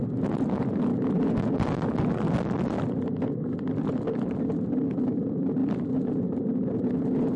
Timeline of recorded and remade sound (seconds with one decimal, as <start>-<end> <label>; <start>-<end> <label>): 0.0-7.4 recorded